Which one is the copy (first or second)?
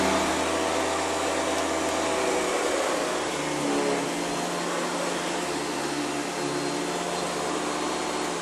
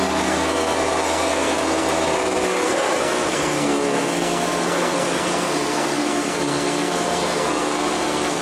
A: second